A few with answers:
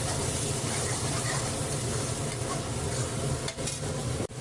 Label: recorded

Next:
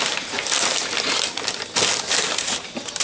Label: recorded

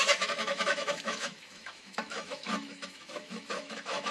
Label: remade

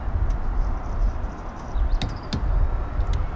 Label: recorded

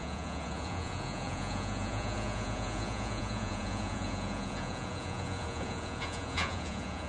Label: remade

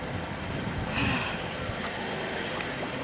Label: recorded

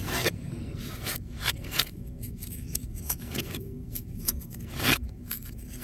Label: remade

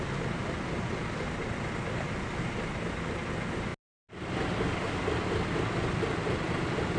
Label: recorded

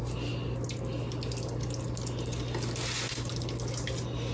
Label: recorded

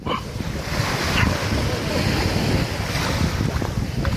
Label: recorded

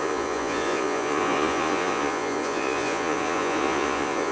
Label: remade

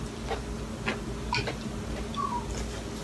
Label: recorded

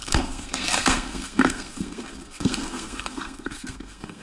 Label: remade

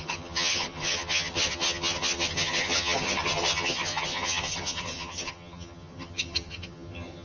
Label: remade